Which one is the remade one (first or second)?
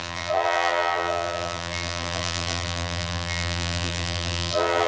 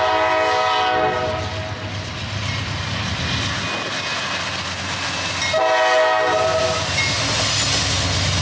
first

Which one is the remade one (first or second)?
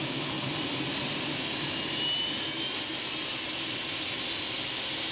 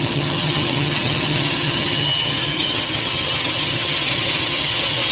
second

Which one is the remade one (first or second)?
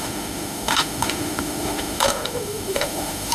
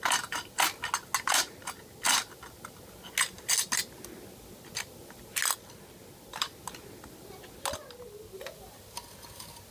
first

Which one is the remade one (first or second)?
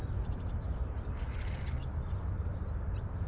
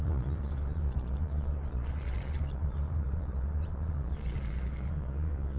second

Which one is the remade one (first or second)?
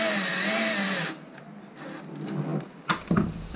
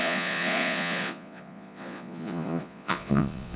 second